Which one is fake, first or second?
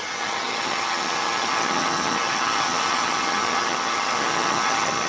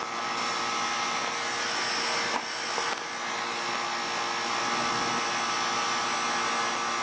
first